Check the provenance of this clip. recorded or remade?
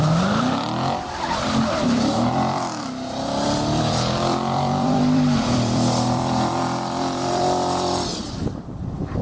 remade